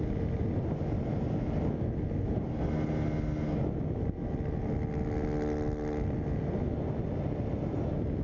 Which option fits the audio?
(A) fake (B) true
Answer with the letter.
B